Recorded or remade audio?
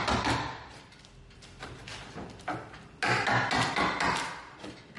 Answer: recorded